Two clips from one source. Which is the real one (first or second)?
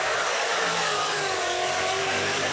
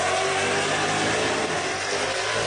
second